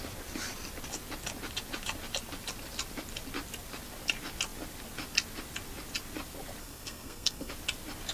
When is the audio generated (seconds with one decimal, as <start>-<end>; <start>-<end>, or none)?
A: 6.6-7.5